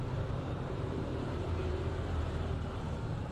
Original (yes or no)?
no